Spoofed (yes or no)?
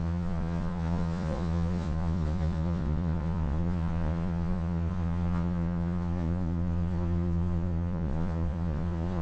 yes